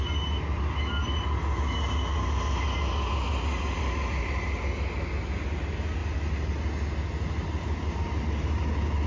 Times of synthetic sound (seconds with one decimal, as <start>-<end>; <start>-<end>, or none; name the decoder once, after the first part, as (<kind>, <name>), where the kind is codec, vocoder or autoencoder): none